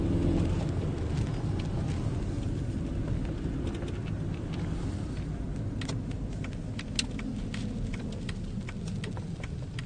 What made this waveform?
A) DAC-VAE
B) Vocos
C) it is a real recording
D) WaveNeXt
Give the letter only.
C